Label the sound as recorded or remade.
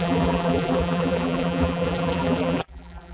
remade